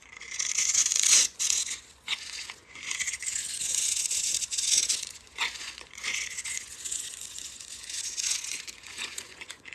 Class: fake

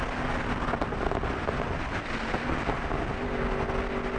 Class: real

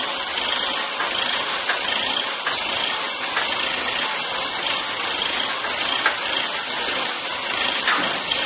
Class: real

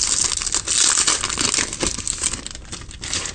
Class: real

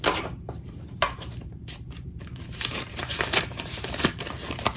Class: fake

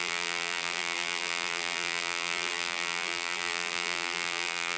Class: fake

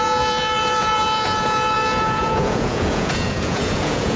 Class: fake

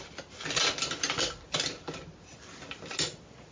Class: real